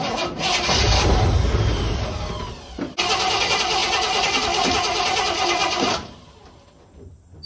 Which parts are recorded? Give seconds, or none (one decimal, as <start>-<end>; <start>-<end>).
0.0-7.5